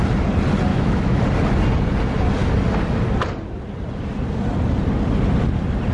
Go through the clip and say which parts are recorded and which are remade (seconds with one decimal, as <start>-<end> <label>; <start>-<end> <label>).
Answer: 0.0-0.7 recorded; 0.7-1.2 remade; 1.2-5.9 recorded